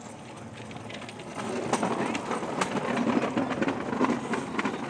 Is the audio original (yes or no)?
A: yes